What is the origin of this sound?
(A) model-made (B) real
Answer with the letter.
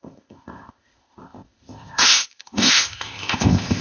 A